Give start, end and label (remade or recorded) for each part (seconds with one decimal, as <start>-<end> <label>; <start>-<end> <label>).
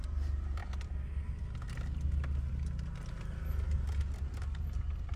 0.0-5.2 recorded